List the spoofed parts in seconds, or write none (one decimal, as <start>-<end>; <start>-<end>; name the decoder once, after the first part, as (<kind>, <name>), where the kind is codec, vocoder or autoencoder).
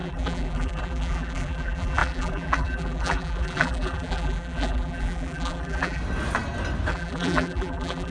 0.0-6.0 (vocoder, BigVGAN v2); 6.9-8.1